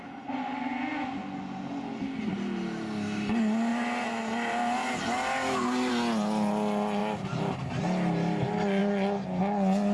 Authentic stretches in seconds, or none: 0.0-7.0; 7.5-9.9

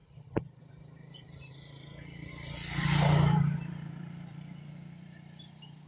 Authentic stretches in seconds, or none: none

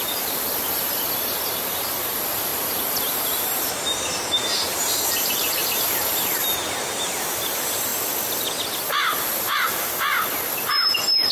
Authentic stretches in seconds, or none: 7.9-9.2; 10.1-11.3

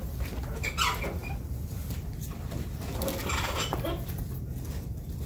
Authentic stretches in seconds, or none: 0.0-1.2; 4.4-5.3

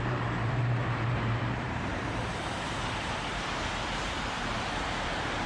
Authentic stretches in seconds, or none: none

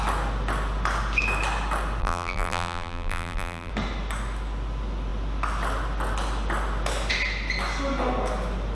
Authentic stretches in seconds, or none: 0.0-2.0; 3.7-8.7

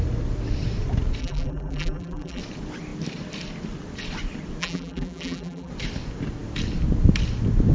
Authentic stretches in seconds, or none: 0.0-1.2; 2.4-4.6; 5.7-7.7